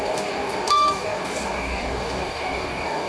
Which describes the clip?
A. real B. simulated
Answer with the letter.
B